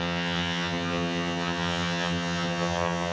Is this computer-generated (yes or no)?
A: yes